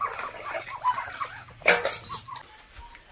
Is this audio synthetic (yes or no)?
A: no